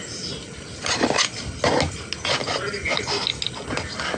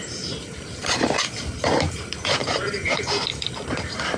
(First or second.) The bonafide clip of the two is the first